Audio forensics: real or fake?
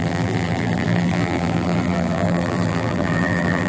fake